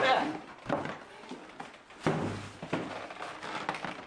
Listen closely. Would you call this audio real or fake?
real